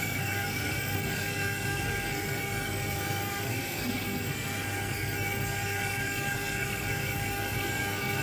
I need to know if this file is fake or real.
fake